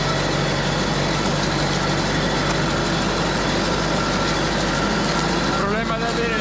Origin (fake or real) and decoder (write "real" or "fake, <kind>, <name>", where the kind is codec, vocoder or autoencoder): real